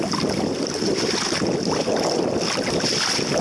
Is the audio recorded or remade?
recorded